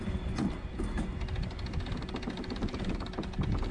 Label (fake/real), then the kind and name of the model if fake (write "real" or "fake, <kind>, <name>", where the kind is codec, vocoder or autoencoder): real